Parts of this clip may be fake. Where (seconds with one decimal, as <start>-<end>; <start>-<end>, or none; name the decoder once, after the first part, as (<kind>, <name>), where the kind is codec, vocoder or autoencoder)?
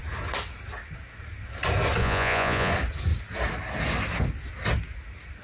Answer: 2.0-2.7 (vocoder, Vocos)